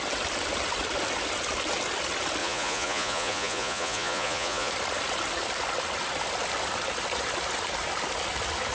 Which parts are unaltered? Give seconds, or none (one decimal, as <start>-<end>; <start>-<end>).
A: 0.0-2.4; 4.7-8.7